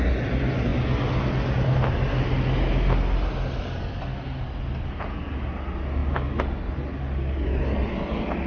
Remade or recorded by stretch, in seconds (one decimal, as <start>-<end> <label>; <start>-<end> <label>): 0.0-8.5 recorded